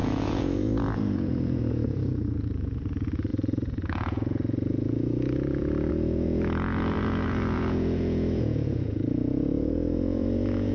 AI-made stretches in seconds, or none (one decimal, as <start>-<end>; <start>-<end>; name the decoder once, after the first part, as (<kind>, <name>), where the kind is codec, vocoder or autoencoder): 0.0-10.7 (vocoder, Vocos)